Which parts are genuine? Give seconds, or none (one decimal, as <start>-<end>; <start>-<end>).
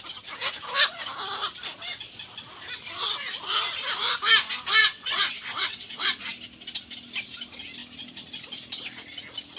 0.0-4.8; 6.2-9.6